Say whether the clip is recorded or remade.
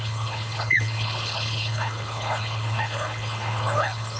remade